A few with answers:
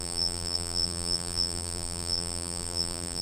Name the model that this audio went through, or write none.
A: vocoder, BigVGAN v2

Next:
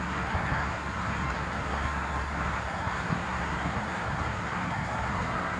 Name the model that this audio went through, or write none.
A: codec, SNAC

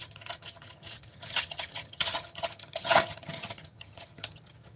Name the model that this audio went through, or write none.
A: vocoder, HiFi-GAN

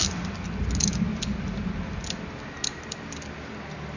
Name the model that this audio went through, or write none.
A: none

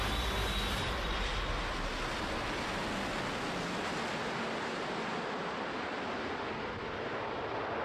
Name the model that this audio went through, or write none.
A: none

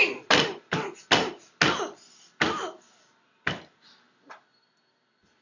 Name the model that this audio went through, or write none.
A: none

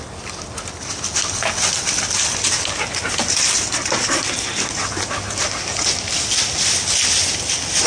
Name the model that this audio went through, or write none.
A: none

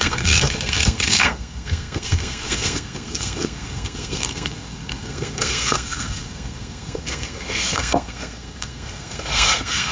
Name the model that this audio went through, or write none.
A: codec, SNAC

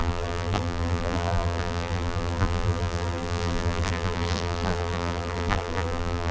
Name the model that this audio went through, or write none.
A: vocoder, BigVGAN v2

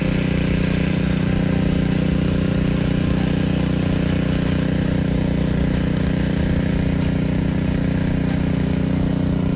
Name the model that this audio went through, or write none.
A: none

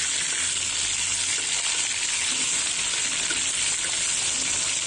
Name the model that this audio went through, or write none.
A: none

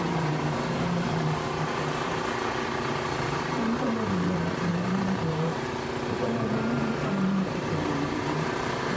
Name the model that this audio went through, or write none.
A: vocoder, BigVGAN v2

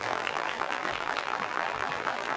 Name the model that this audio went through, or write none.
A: vocoder, BigVGAN v2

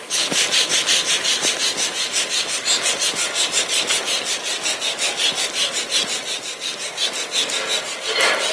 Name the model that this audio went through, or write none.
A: none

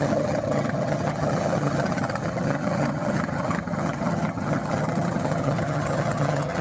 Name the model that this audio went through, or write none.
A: vocoder, HiFi-GAN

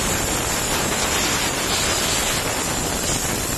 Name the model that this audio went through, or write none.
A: none